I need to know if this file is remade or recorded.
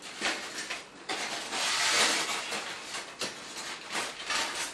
recorded